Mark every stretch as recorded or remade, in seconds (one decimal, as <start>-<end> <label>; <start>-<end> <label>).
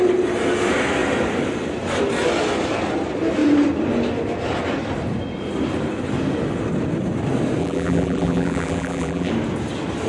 0.0-7.6 recorded; 7.6-9.3 remade; 9.3-10.1 recorded